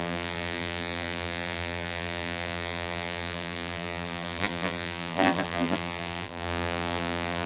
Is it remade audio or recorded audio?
remade